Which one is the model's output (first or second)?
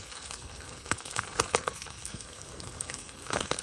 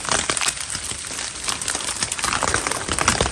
first